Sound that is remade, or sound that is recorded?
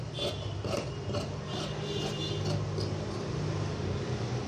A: remade